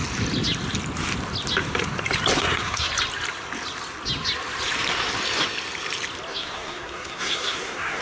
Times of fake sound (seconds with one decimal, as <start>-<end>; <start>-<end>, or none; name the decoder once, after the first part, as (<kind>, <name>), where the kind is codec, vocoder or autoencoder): 2.3-2.9 (codec, SNAC); 6.3-8.0